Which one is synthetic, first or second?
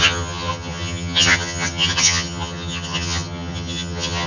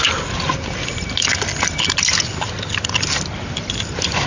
first